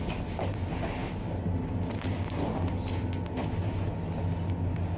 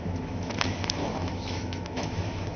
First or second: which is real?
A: first